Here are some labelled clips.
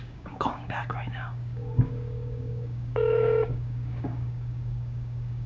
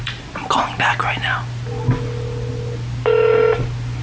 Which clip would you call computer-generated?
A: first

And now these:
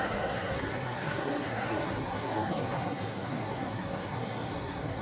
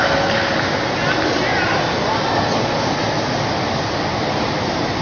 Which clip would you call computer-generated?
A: first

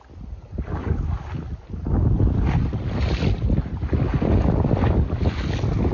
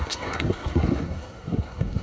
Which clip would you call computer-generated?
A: second